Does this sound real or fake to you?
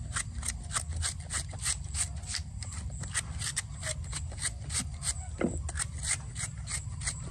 real